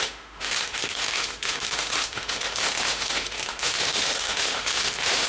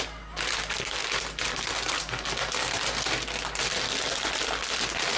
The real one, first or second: second